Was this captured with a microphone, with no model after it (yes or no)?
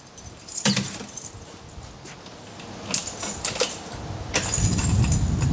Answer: yes